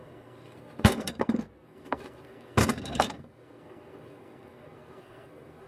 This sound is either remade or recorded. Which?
remade